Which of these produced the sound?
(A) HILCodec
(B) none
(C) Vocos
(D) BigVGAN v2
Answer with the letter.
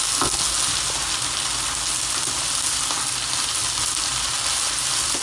B